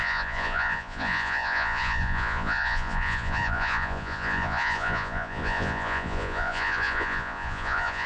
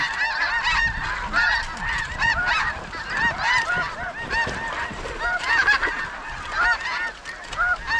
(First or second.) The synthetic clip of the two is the first